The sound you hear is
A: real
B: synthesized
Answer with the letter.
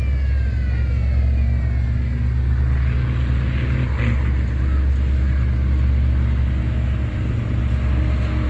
A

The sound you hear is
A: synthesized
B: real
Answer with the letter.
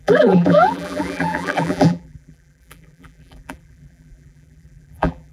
A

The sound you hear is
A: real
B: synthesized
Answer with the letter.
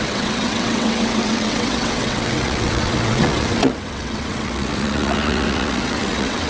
B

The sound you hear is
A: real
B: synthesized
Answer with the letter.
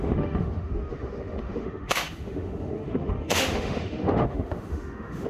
B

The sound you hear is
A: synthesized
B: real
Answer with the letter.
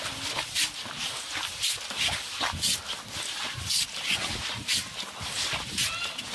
B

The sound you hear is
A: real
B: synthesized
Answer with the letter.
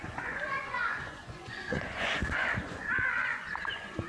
B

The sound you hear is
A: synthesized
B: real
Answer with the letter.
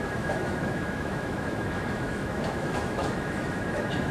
A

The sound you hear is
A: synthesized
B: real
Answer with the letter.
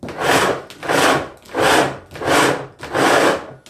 B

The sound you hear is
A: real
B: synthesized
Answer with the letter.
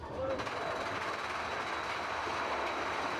A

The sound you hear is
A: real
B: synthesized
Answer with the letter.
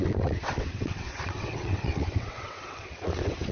B